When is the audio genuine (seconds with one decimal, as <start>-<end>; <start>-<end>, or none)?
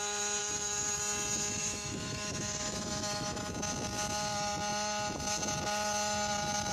0.0-0.4; 1.0-1.6; 3.5-6.7